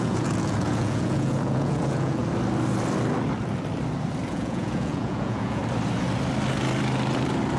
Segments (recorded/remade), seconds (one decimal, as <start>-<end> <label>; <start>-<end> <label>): 0.0-2.2 remade; 2.2-4.3 recorded; 4.3-5.6 remade; 5.6-7.6 recorded